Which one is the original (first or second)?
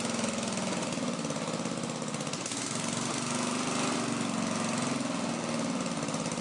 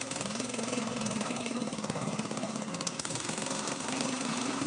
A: first